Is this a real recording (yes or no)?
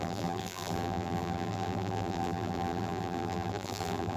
no